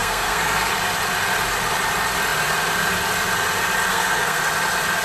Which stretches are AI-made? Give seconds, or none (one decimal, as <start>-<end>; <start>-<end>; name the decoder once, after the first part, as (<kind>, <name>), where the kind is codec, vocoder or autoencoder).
0.0-0.7 (codec, SNAC); 3.9-4.4